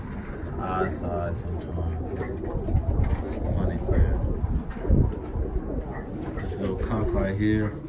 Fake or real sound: real